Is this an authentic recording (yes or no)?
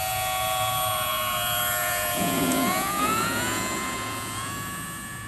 no